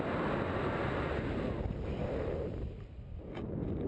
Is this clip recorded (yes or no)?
yes